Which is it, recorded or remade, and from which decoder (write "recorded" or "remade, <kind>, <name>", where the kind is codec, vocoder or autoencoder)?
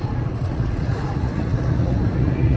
remade, vocoder, Vocos